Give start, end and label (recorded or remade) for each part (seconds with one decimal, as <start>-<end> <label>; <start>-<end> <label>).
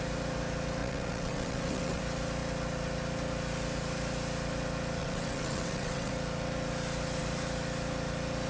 0.0-0.8 recorded; 0.8-2.0 remade; 2.0-5.0 recorded; 5.0-6.1 remade; 6.1-8.5 recorded